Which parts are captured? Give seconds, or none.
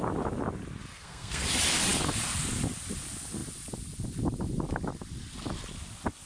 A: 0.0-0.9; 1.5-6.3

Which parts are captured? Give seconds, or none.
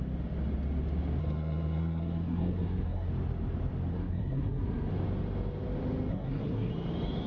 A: 0.0-1.2; 3.1-3.9; 4.9-6.1; 6.7-7.3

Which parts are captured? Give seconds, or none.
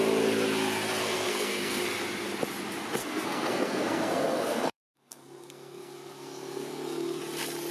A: 0.0-1.0; 1.8-3.0; 7.2-7.7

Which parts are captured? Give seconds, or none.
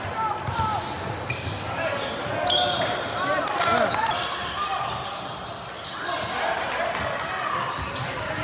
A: 0.0-8.4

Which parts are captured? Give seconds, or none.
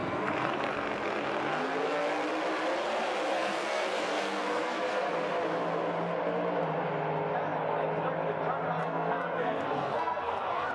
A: 1.3-3.3; 5.1-8.8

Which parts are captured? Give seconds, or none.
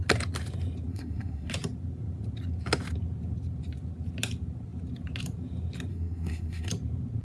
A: 0.0-0.9; 1.5-5.9; 6.7-7.2